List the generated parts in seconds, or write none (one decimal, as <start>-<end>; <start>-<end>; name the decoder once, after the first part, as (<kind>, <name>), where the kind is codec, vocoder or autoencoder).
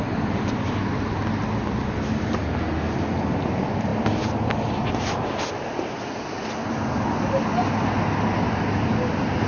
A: none